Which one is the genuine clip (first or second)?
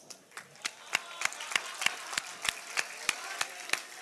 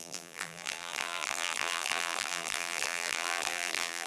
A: first